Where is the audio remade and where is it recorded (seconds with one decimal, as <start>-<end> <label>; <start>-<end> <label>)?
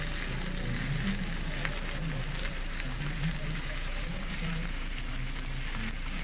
0.0-2.4 recorded; 2.4-5.0 remade; 5.0-6.2 recorded